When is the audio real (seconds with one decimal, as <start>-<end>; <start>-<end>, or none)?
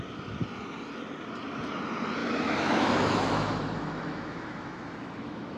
0.0-2.2